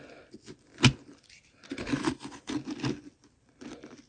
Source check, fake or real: real